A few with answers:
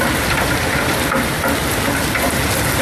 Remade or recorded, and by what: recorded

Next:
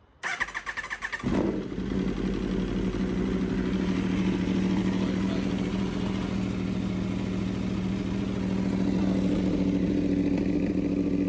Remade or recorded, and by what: recorded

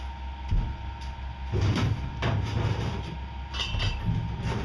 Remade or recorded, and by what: recorded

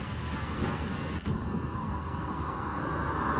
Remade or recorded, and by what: remade, codec, SNAC